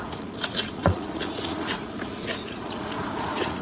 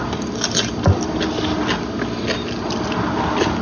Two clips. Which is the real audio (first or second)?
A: second